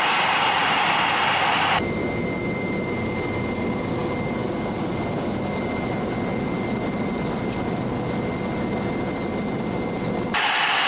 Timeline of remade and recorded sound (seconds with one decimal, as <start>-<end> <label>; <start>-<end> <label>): 0.0-10.9 recorded